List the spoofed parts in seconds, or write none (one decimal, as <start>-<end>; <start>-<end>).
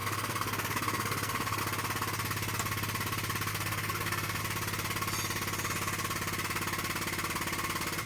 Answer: 0.0-1.6; 3.5-4.4